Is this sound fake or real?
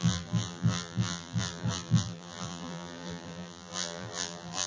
fake